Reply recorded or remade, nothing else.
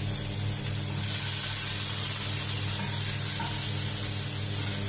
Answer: recorded